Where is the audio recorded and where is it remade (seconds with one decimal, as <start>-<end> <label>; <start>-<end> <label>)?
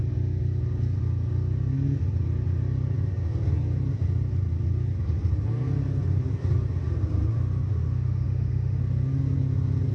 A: 0.0-7.7 recorded; 7.7-8.8 remade; 8.8-9.9 recorded